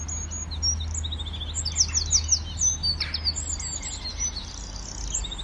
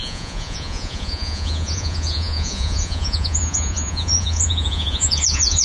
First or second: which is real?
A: first